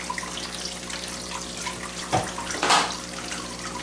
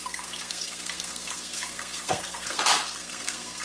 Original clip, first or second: first